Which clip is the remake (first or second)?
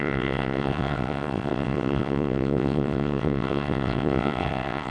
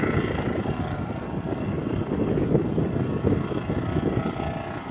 first